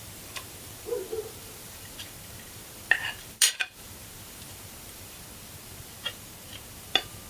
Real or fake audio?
fake